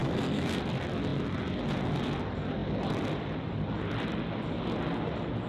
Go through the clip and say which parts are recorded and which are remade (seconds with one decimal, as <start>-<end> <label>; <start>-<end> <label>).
0.0-0.6 remade; 0.6-5.5 recorded